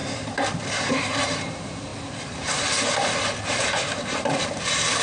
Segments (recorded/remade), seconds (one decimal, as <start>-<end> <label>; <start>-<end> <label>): 0.0-1.9 remade; 1.9-3.4 recorded; 3.4-5.0 remade